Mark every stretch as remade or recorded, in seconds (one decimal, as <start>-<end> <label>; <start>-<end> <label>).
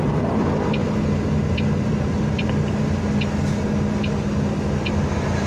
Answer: 0.0-5.5 recorded